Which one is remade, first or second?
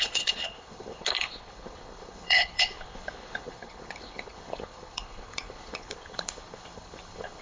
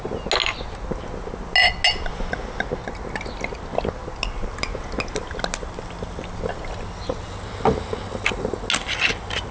first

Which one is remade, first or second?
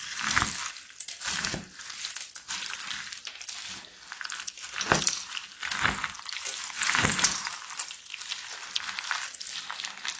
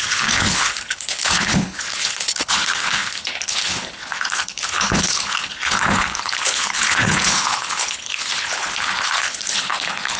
second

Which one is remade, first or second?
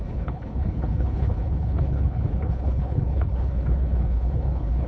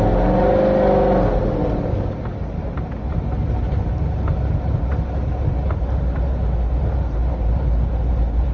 first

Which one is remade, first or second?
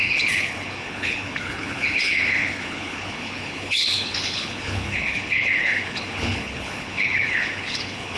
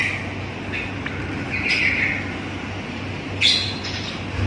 first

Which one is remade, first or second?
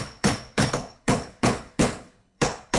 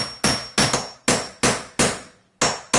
first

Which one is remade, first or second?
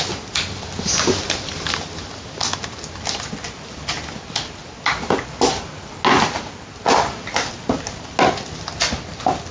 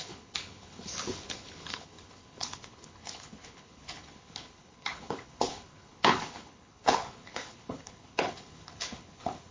second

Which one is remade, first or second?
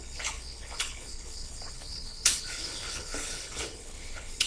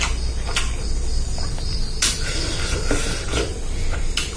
first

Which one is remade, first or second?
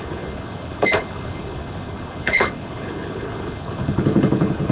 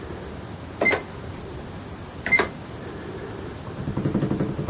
first